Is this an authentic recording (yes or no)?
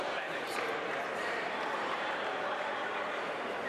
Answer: no